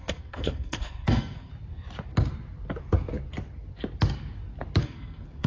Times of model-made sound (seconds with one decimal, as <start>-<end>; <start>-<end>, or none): 0.0-1.5; 4.8-5.5